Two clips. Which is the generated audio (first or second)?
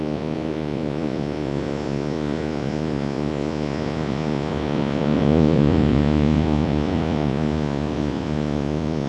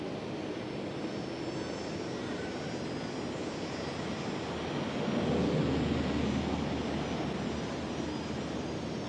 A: first